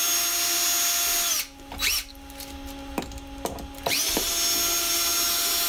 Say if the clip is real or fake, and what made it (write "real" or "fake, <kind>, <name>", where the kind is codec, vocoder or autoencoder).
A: real